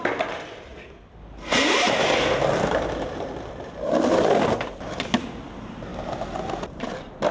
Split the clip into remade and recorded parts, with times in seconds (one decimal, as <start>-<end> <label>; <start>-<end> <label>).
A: 0.0-0.7 recorded; 0.7-3.7 remade; 3.7-7.3 recorded